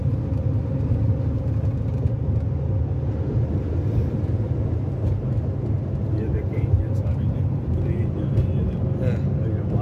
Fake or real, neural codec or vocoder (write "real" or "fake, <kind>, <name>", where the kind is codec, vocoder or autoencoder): real